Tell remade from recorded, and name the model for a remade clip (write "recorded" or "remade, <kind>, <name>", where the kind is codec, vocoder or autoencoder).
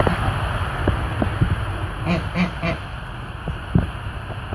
recorded